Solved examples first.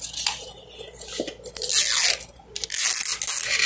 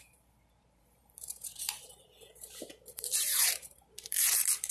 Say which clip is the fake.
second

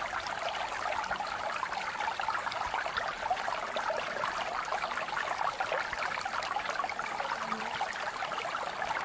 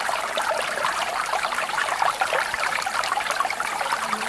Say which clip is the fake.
second